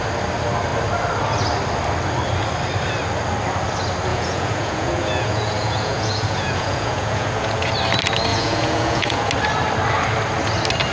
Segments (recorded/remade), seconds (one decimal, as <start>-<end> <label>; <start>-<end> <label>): 0.0-4.1 recorded; 4.1-7.7 remade; 7.7-8.3 recorded; 8.3-9.3 remade; 9.3-10.9 recorded